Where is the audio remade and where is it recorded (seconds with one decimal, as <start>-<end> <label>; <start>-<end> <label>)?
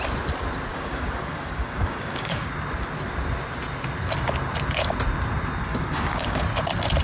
0.0-0.7 recorded; 0.7-2.5 remade; 2.5-5.7 recorded; 5.7-6.4 remade; 6.4-7.0 recorded